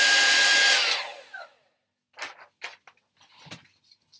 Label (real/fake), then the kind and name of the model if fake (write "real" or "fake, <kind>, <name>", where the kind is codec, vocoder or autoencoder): real